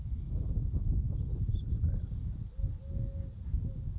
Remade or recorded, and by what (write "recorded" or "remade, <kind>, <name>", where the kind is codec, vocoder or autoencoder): recorded